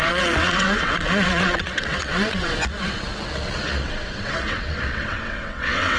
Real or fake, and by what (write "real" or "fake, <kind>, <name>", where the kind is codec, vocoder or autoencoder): fake, vocoder, WaveNeXt